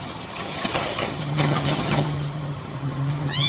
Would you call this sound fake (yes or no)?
yes